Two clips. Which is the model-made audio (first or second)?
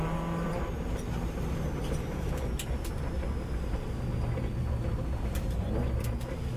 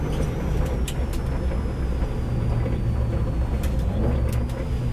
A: first